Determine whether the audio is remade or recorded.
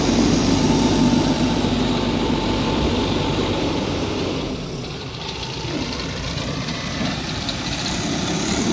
remade